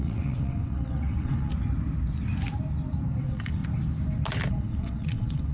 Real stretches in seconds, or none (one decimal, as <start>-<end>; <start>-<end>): 1.5-3.2; 3.6-4.5